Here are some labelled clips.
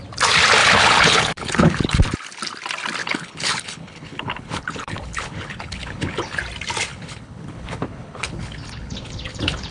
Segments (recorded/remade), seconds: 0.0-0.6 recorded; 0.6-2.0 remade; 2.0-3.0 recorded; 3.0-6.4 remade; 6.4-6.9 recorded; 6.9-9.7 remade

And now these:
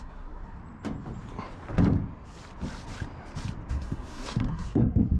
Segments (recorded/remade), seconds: 0.0-0.6 remade; 0.6-3.7 recorded; 3.7-5.2 remade

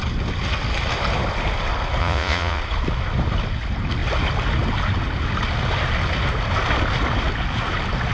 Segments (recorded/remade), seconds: 0.0-2.0 recorded; 2.0-2.6 remade; 2.6-8.1 recorded

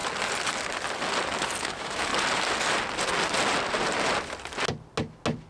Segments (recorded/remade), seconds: 0.0-1.6 recorded; 1.6-2.1 remade; 2.1-5.5 recorded